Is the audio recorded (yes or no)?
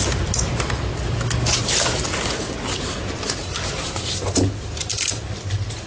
yes